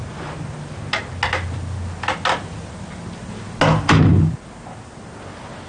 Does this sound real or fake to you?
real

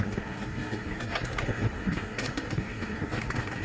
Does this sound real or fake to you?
fake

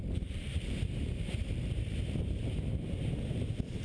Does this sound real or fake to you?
fake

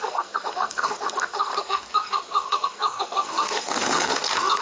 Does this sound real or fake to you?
fake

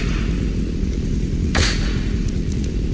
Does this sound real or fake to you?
fake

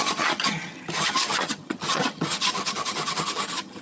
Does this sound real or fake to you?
fake